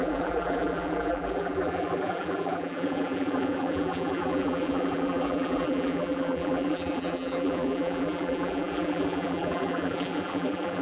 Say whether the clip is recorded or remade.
remade